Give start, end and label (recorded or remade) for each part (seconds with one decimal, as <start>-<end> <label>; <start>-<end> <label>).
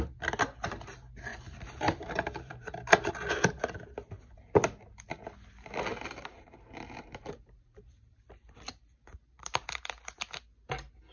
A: 0.0-1.3 recorded; 1.3-3.1 remade; 3.1-5.9 recorded; 5.9-9.8 remade; 9.8-11.1 recorded